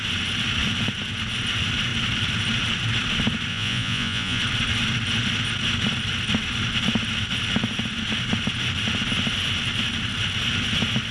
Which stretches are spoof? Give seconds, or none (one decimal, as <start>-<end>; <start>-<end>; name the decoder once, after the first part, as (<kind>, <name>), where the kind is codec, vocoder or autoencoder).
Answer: 3.5-4.4 (vocoder, Vocos)